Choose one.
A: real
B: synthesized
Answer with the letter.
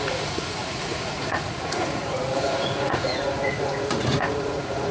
B